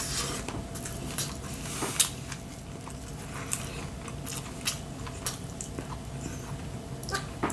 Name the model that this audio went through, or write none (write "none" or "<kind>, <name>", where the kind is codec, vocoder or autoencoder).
none